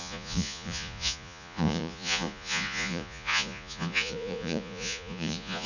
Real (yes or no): no